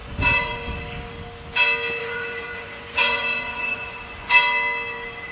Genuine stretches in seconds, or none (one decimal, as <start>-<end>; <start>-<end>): 0.8-2.0; 4.3-5.3